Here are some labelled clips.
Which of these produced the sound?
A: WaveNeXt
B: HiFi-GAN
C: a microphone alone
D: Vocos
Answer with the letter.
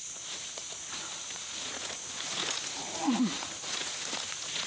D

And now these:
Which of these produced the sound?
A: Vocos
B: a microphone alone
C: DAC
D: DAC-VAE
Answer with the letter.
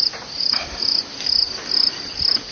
B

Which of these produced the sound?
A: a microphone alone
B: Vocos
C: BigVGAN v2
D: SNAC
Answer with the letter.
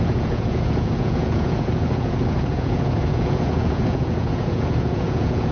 B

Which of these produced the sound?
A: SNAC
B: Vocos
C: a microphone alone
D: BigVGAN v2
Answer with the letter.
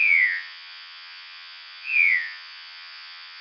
B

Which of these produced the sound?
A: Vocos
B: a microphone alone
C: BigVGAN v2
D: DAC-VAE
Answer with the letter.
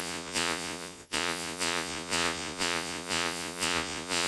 A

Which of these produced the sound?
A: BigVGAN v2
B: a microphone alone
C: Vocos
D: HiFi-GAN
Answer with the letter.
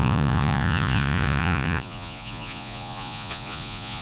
C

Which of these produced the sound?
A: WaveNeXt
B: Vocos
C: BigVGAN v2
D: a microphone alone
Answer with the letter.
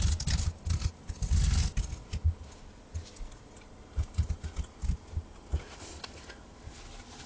D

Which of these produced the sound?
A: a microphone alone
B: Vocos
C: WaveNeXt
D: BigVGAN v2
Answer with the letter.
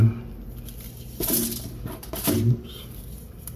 A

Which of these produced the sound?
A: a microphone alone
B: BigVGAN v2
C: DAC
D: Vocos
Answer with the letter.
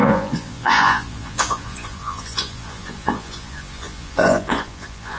D